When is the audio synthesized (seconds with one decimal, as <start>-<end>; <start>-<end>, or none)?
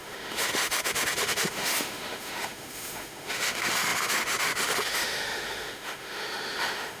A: 0.0-7.0